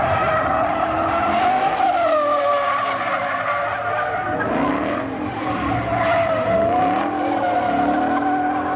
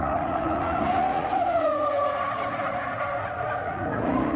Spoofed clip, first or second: second